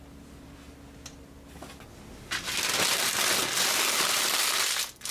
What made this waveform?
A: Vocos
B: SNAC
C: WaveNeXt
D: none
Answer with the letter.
D